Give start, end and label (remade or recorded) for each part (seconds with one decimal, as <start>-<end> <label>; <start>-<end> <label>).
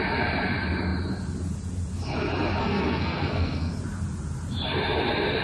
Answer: 0.0-2.6 recorded; 2.6-3.7 remade; 3.7-5.4 recorded